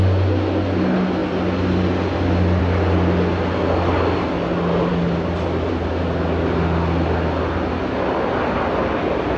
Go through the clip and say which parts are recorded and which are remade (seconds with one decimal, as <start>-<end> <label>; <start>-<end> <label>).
0.0-9.4 recorded

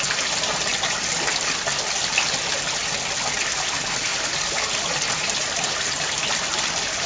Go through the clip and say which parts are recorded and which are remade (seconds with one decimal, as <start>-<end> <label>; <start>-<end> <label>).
0.0-7.1 recorded

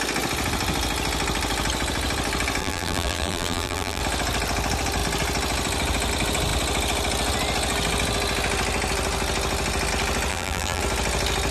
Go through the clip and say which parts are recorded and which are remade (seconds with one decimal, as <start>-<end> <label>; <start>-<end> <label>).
0.0-2.6 recorded; 2.6-4.0 remade; 4.0-10.3 recorded; 10.3-10.8 remade; 10.8-11.5 recorded

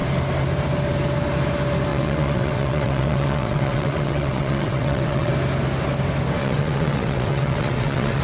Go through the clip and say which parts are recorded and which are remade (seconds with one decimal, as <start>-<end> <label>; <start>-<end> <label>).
0.0-1.9 recorded; 1.9-5.3 remade; 5.3-6.4 recorded; 6.4-8.2 remade